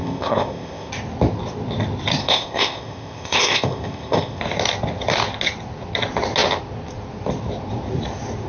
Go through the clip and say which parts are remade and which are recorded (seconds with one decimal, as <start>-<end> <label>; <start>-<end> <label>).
0.0-0.9 remade; 0.9-2.2 recorded; 2.2-4.4 remade; 4.4-8.5 recorded